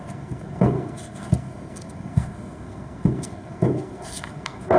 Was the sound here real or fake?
fake